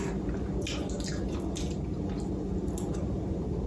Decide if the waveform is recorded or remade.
recorded